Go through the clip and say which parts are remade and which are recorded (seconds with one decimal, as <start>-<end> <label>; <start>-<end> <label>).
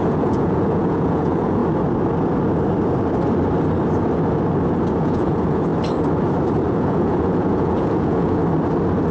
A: 0.0-1.6 remade; 1.6-5.0 recorded; 5.0-5.7 remade; 5.7-6.7 recorded; 6.7-8.4 remade; 8.4-9.1 recorded